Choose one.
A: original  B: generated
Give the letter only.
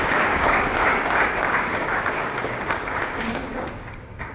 B